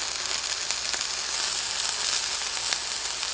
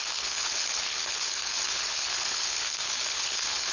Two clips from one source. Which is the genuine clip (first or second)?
first